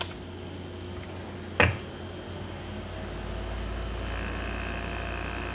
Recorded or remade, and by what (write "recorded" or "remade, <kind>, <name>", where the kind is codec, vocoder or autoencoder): recorded